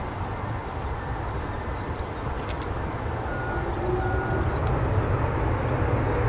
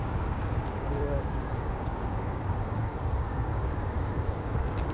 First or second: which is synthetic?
second